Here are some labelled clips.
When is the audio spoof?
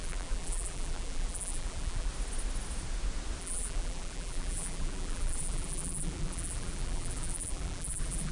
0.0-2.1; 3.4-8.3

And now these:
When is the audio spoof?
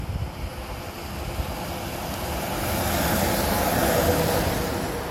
none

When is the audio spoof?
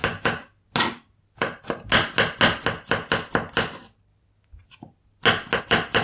3.1-4.1; 5.6-6.0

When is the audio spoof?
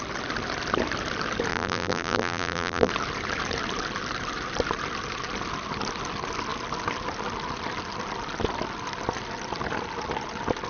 1.5-2.9